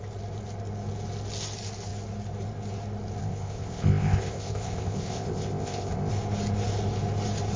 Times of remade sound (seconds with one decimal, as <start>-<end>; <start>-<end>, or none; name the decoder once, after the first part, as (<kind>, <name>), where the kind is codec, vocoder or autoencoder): 3.2-6.1 (codec, ZipCodec)